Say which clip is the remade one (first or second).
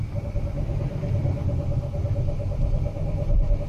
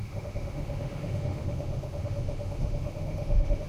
second